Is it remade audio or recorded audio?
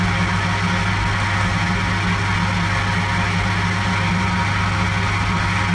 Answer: recorded